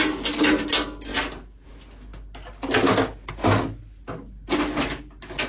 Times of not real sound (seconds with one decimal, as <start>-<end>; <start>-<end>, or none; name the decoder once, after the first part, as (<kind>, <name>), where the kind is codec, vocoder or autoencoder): none